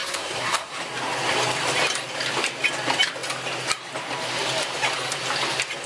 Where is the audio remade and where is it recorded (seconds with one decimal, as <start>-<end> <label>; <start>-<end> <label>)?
0.0-0.7 remade; 0.7-5.9 recorded